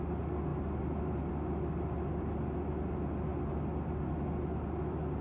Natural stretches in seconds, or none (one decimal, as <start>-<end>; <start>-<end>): 0.0-5.2